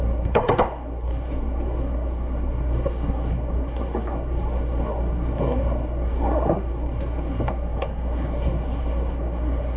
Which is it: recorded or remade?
remade